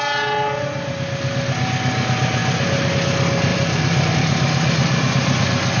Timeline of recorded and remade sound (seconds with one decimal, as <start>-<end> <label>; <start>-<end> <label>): 0.0-3.5 recorded; 3.5-4.1 remade; 4.1-5.8 recorded